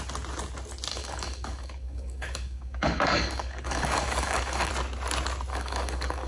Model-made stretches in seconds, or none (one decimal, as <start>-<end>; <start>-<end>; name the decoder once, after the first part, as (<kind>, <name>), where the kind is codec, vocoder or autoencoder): 0.9-4.7 (codec, DAC); 5.5-6.3